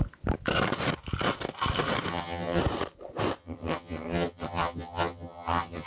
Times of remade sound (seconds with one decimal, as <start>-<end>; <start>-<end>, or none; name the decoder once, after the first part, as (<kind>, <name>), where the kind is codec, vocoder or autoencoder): 2.1-2.6 (vocoder, HiFi-GAN); 3.4-5.9